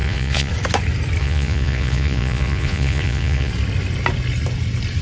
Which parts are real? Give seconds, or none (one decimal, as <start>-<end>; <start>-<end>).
0.5-1.2; 3.5-5.0